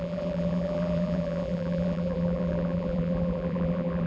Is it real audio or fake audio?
fake